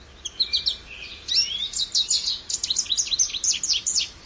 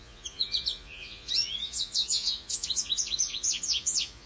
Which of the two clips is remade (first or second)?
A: second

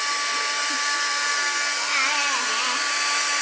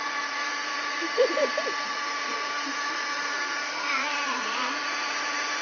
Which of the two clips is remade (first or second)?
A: second